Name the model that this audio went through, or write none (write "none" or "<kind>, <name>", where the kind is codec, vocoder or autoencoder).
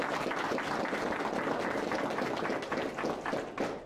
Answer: none